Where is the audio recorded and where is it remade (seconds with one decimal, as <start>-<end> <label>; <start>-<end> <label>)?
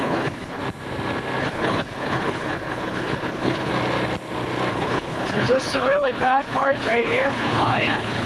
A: 0.0-0.6 remade; 0.6-1.4 recorded; 1.4-3.7 remade; 3.7-4.7 recorded; 4.7-8.3 remade